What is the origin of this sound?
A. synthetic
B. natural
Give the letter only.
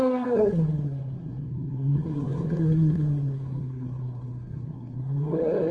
A